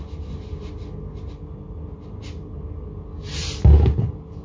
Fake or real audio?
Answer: real